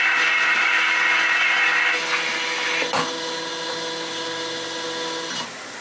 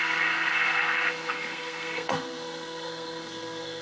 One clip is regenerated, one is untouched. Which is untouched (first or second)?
first